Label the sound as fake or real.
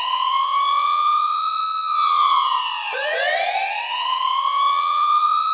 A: fake